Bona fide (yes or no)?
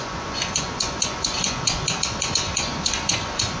no